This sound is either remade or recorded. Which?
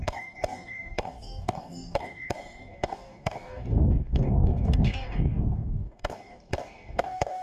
remade